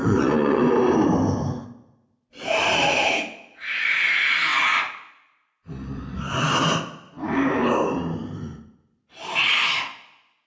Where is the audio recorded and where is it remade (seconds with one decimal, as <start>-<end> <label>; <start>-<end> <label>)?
0.0-0.8 remade; 0.8-10.5 recorded